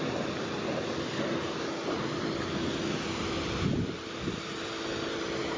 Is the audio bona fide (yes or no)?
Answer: yes